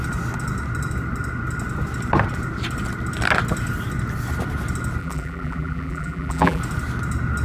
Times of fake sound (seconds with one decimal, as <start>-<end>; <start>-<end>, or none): 5.0-6.6